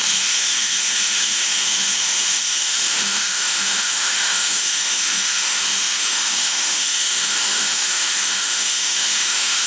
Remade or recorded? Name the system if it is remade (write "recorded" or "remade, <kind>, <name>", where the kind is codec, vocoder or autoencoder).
remade, autoencoder, DAC-VAE